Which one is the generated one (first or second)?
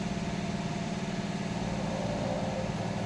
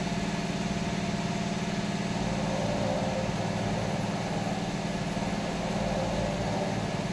first